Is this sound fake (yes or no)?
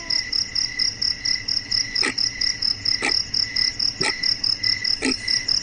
no